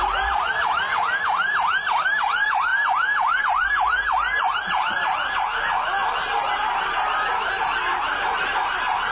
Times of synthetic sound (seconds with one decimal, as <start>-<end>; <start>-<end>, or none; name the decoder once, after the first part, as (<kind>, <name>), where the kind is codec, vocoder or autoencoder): 0.0-2.7 (vocoder, BigVGAN v2); 3.4-5.5; 7.5-8.1; 8.7-9.1